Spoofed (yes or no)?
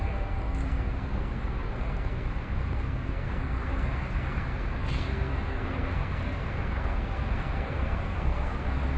yes